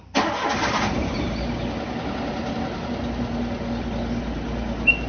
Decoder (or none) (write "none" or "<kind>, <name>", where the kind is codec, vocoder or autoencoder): none